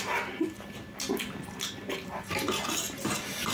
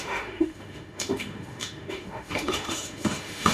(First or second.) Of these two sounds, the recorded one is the first